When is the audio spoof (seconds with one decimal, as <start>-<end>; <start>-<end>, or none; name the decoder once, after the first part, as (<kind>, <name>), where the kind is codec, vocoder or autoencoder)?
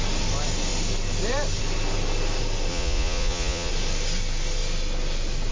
2.7-3.7 (vocoder, Vocos)